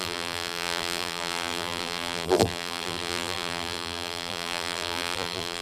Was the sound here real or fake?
fake